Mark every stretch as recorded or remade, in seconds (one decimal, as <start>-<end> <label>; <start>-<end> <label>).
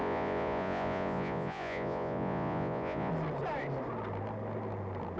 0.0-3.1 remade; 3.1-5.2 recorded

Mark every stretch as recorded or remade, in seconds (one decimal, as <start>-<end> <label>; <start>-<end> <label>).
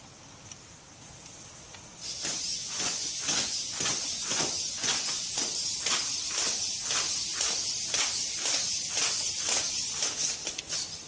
0.0-2.6 recorded; 2.6-5.4 remade; 5.4-11.1 recorded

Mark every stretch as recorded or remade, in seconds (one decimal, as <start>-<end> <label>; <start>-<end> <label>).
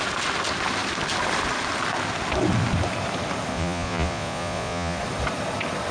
0.0-3.5 recorded; 3.5-5.0 remade; 5.0-5.9 recorded